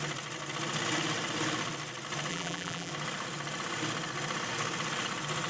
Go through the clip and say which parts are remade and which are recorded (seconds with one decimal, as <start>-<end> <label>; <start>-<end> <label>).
0.0-2.3 recorded; 2.3-2.9 remade; 2.9-5.5 recorded